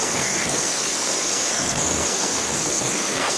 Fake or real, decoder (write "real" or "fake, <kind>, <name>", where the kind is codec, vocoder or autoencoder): fake, codec, SNAC